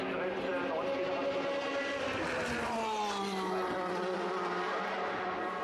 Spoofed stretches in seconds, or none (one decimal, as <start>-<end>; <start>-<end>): none